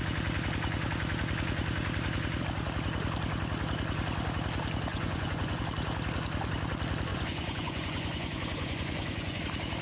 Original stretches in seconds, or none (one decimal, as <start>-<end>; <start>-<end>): 0.0-4.9; 5.6-7.1; 9.4-9.8